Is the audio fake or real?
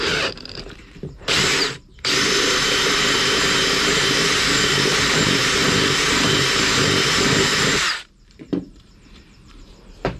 fake